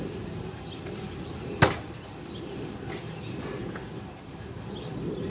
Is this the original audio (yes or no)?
yes